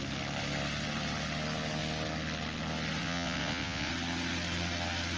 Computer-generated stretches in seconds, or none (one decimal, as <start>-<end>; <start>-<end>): 3.0-3.9